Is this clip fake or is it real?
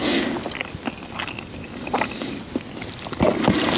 real